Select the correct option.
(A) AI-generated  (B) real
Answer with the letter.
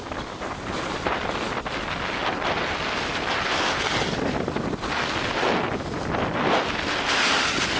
B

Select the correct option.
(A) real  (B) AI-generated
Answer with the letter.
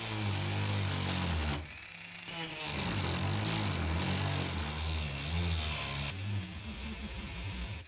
A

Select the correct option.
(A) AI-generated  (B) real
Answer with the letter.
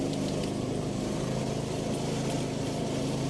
B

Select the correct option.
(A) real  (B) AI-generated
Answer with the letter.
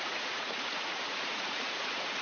B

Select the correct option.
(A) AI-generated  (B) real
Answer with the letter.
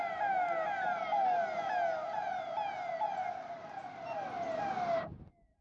B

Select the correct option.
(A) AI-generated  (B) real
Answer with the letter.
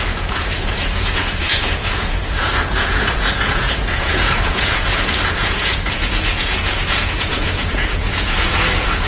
A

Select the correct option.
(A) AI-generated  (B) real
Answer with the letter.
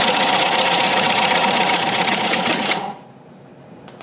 A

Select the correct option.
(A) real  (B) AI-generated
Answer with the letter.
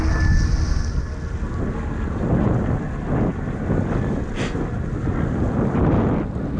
A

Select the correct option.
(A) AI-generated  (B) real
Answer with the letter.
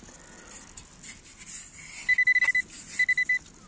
B